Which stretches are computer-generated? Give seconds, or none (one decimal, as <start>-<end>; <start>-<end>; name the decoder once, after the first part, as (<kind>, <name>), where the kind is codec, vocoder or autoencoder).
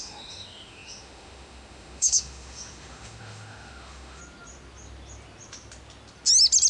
0.0-4.2 (autoencoder, DAC-VAE)